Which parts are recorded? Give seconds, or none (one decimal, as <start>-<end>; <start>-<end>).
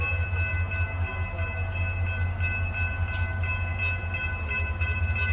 0.0-5.3